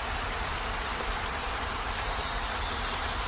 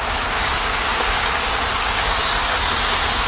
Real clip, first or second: first